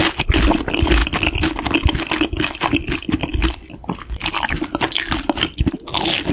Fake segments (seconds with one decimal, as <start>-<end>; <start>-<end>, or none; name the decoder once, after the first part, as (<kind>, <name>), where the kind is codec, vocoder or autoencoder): none